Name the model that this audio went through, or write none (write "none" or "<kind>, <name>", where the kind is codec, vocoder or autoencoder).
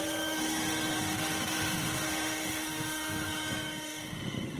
autoencoder, DAC-VAE